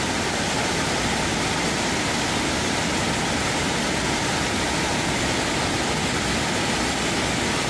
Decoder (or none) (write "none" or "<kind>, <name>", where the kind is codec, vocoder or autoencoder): none